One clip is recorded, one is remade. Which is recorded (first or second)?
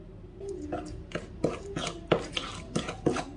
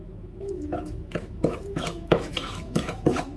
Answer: first